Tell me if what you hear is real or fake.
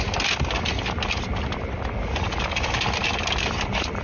real